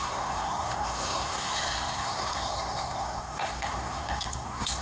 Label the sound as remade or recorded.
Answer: remade